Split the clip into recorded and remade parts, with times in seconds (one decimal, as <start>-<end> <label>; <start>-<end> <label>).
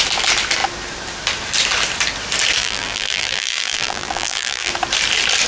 0.0-2.6 recorded; 2.6-4.7 remade; 4.7-5.5 recorded